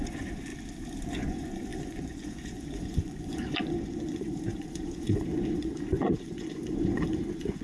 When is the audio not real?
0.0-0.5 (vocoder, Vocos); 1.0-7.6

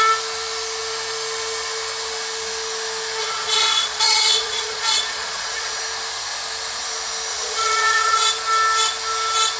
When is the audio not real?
3.2-5.8 (vocoder, Vocos); 7.3-8.3

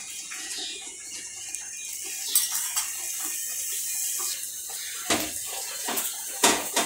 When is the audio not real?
0.0-1.4 (vocoder, Vocos); 5.4-6.9

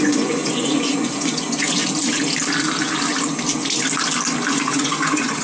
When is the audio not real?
0.0-1.8 (vocoder, Vocos); 4.5-5.4